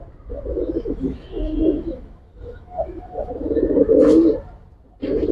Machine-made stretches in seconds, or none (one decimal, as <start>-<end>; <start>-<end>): 0.5-3.3